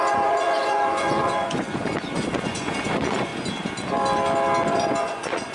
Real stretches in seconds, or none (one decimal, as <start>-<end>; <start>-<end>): 3.3-4.7